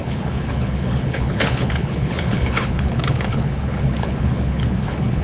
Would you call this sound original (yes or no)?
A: no